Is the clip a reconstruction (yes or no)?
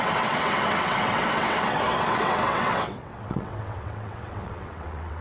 yes